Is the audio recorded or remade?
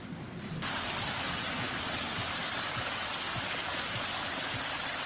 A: remade